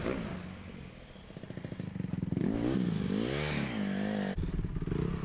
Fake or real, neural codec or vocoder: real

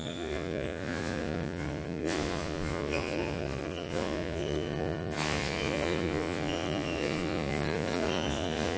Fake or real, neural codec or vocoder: fake, vocoder, Vocos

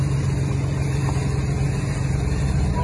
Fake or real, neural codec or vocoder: real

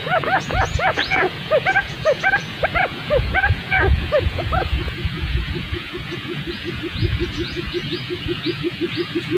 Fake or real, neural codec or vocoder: fake, vocoder, Vocos